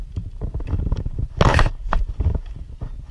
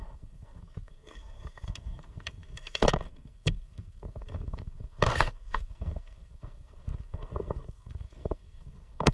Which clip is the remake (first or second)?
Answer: second